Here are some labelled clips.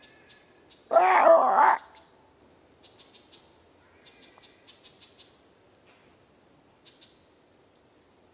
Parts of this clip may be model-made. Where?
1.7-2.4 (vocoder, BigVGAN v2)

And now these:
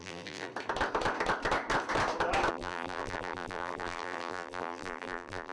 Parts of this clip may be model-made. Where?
0.0-0.5 (vocoder, BigVGAN v2); 2.5-5.5

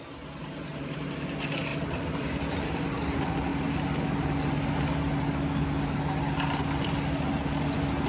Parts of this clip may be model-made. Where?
0.4-1.0 (vocoder, BigVGAN v2); 1.7-2.4